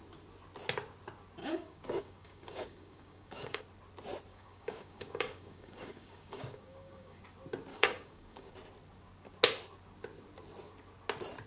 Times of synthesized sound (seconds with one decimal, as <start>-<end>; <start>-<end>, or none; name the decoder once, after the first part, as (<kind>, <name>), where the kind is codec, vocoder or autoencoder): 1.4-3.6 (codec, DAC); 4.3-7.2; 7.7-8.5